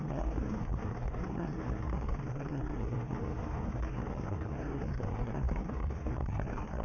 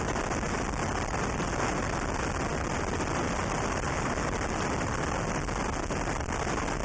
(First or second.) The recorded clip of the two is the second